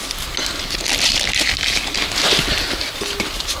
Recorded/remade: recorded